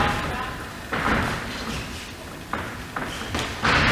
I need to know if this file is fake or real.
real